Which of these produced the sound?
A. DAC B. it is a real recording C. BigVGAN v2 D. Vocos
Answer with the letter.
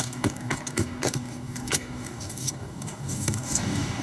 A